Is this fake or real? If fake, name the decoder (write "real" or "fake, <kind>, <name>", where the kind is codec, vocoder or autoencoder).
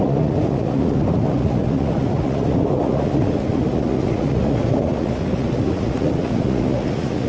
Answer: fake, vocoder, Vocos